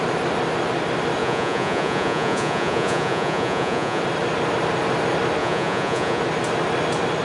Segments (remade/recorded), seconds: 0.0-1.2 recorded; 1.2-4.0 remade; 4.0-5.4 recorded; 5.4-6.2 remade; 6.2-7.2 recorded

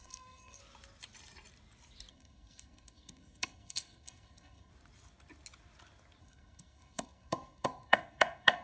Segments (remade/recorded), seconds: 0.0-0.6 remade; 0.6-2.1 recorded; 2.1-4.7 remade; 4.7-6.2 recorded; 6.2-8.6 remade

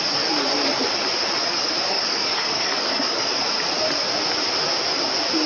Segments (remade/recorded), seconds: 0.0-1.4 recorded; 1.4-3.3 remade; 3.3-5.5 recorded

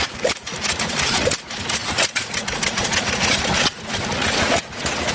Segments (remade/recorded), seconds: 0.0-5.1 remade